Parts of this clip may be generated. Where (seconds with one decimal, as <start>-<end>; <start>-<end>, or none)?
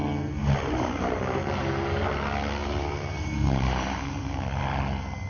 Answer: 0.4-1.2; 2.6-4.6